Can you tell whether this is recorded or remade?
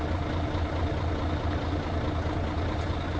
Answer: recorded